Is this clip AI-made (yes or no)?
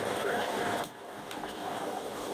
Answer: yes